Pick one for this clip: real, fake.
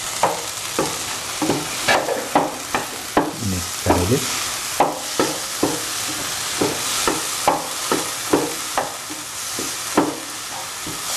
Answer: real